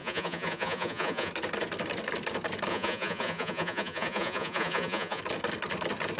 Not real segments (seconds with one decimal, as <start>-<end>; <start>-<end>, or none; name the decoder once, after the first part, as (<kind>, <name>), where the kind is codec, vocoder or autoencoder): 0.0-1.3 (vocoder, Vocos); 2.7-5.2